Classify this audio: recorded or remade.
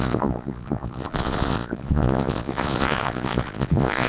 remade